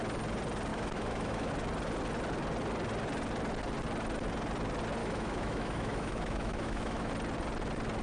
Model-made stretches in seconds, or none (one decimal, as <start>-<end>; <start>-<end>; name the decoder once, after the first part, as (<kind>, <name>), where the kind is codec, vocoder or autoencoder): 0.7-1.5 (autoencoder, DAC-VAE); 5.0-7.1